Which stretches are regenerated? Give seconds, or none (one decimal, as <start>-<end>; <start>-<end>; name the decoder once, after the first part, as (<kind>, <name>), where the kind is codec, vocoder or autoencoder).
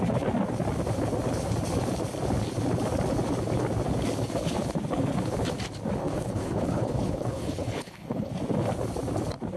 6.0-8.3 (codec, HILCodec)